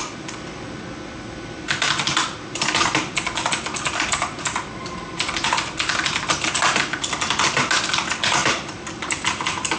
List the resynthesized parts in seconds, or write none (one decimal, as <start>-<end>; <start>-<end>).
none